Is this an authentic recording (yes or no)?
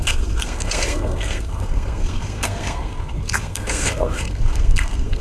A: no